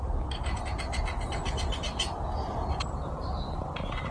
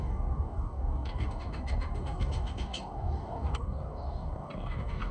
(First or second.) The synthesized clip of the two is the second